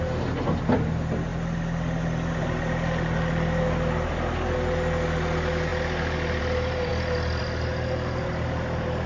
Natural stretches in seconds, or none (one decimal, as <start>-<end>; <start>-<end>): 0.0-9.1